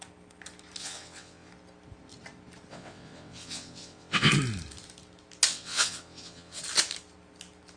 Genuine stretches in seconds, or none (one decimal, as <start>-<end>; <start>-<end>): 0.0-0.8; 1.5-2.7; 4.3-5.5; 6.6-7.8